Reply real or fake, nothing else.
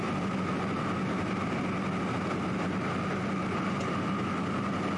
real